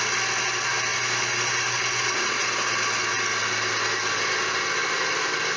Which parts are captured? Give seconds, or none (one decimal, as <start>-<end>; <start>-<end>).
0.0-5.6